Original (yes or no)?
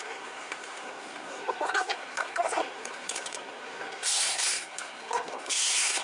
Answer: no